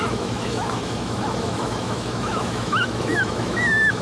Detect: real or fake fake